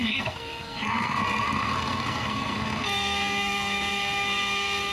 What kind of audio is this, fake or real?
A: fake